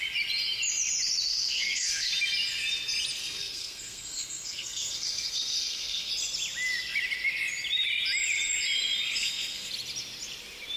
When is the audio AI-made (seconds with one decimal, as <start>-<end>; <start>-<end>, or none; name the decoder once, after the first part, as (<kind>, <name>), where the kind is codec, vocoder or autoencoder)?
1.3-2.1 (codec, SNAC); 3.2-6.1; 9.2-9.7